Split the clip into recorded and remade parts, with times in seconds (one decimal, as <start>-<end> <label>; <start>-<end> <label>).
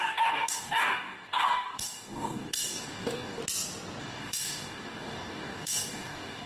0.0-3.4 remade; 3.4-4.0 recorded; 4.0-6.5 remade